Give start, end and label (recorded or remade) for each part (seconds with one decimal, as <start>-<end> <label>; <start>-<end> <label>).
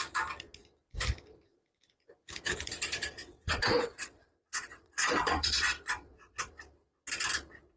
0.0-3.2 recorded; 3.2-6.5 remade; 6.5-7.8 recorded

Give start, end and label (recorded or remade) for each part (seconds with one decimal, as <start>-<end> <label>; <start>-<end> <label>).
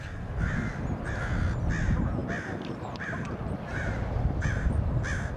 0.0-3.7 recorded; 3.7-5.0 remade; 5.0-5.4 recorded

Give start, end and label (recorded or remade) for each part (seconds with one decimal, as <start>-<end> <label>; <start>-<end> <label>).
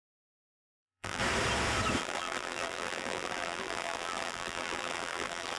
0.0-1.2 remade; 1.2-2.0 recorded; 2.0-5.6 remade